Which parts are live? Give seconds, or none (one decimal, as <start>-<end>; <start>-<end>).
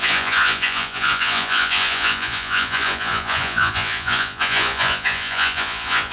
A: none